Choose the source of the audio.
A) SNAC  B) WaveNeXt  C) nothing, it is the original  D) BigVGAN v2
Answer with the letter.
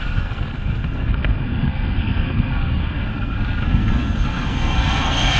A